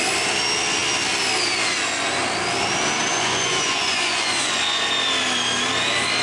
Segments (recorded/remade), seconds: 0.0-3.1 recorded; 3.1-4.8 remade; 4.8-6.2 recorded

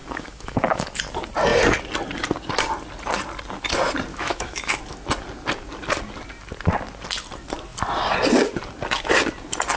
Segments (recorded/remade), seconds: 0.0-1.0 remade; 1.0-4.1 recorded; 4.1-4.8 remade; 4.8-9.8 recorded

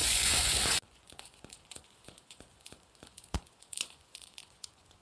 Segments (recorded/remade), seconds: 0.0-5.0 remade